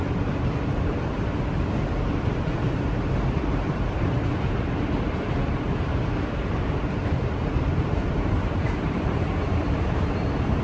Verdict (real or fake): fake